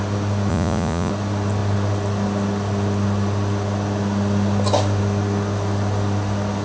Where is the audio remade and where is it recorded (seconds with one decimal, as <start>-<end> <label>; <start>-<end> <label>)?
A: 0.0-0.5 recorded; 0.5-1.1 remade; 1.1-6.6 recorded